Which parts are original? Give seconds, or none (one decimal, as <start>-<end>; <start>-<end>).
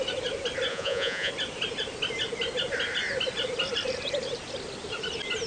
0.0-0.7; 1.3-5.5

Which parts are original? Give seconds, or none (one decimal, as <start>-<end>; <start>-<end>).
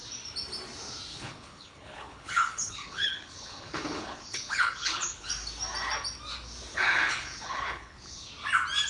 0.0-1.1; 5.3-6.7; 8.3-8.9